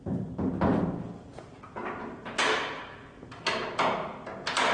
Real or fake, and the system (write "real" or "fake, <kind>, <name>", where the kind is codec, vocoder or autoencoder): real